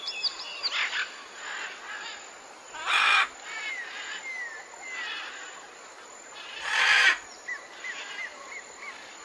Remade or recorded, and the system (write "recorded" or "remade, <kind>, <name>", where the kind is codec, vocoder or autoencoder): recorded